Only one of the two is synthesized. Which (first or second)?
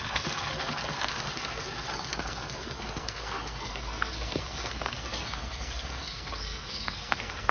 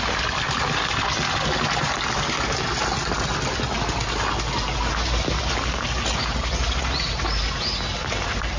first